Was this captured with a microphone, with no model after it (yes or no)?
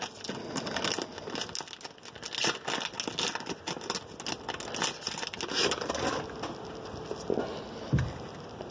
yes